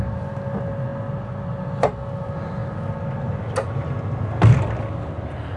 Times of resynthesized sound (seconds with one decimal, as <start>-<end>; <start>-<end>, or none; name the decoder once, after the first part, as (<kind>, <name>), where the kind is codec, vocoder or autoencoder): none